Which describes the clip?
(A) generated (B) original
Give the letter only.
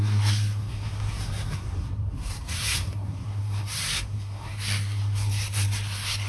A